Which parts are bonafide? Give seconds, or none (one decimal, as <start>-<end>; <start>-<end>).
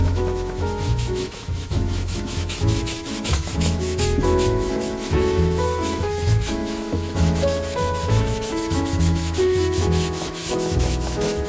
none